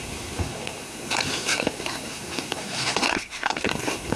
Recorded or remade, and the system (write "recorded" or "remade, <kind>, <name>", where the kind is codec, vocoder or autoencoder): remade, codec, SNAC